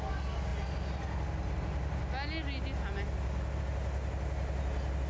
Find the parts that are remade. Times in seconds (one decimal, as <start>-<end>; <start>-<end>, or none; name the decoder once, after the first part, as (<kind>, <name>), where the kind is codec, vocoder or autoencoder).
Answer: none